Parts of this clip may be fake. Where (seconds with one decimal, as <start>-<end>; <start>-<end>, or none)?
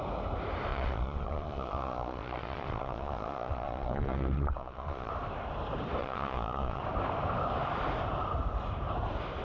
0.7-5.1; 6.0-6.8